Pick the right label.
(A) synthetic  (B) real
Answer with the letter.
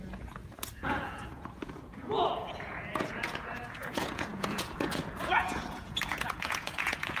A